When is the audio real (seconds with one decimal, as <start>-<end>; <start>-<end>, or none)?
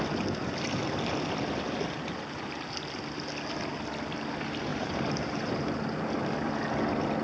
0.0-4.7; 6.1-7.2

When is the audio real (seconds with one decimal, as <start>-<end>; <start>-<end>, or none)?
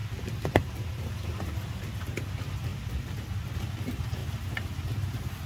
1.5-4.2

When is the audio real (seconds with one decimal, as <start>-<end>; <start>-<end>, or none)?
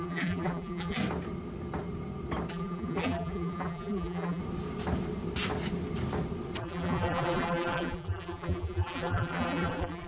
1.0-2.5; 4.4-6.6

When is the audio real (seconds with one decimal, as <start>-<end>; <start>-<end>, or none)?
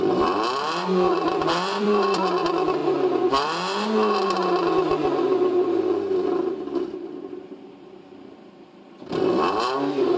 2.8-7.2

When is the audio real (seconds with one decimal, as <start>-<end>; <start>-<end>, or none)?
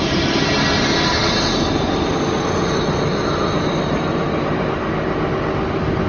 0.0-6.1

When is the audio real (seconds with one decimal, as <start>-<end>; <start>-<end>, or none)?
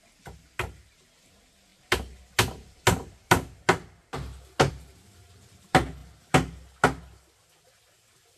0.0-8.4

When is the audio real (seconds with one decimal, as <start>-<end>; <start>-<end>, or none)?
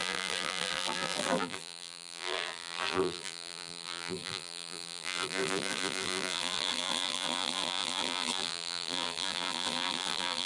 none